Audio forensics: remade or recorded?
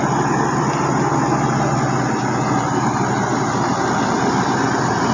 recorded